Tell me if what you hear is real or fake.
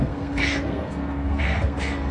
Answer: fake